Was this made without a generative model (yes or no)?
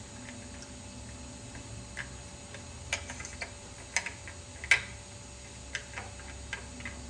yes